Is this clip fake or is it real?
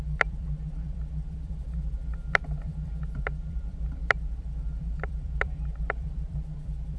fake